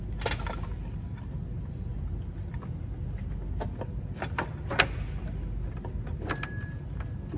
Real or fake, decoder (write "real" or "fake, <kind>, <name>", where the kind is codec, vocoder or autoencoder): real